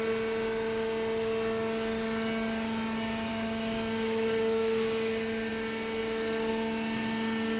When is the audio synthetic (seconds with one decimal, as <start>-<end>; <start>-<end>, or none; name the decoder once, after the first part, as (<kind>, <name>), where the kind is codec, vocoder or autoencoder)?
3.3-5.5 (codec, DAC)